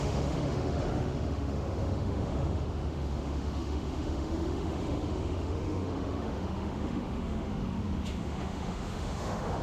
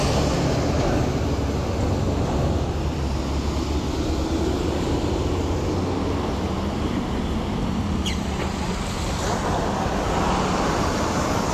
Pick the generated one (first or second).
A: first